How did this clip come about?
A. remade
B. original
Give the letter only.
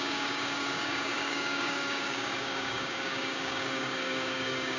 A